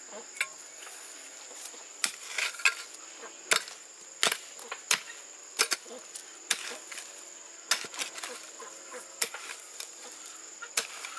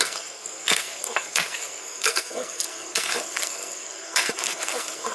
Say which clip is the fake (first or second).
second